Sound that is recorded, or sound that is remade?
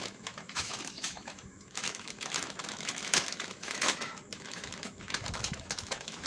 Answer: remade